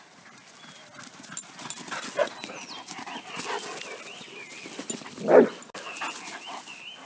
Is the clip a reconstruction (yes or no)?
no